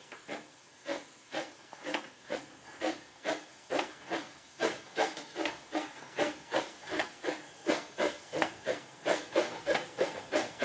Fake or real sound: fake